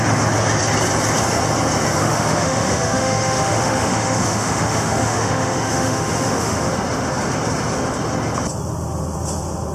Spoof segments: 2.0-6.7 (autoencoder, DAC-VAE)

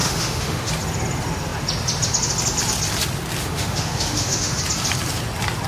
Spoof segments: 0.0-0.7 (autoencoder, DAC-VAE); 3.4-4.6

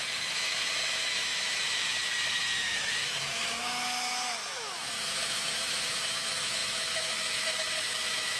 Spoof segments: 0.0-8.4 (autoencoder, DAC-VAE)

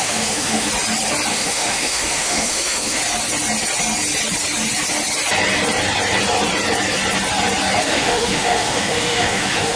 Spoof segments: 0.0-0.7 (autoencoder, DAC-VAE); 1.3-3.0; 7.8-9.8

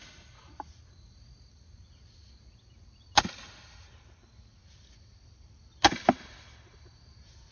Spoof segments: none

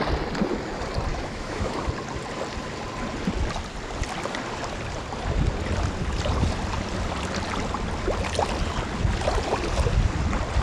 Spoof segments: 1.1-1.8 (autoencoder, DAC-VAE)

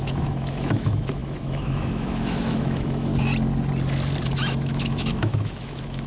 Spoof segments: 0.0-3.1 (autoencoder, DAC-VAE); 4.4-6.1